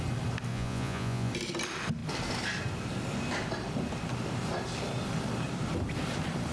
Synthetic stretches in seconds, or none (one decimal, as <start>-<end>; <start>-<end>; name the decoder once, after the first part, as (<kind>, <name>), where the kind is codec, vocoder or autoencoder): 0.5-1.3 (vocoder, Vocos)